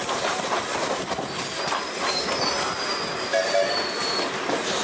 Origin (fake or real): real